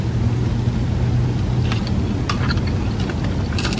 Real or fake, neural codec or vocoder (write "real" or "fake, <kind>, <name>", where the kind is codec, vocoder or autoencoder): real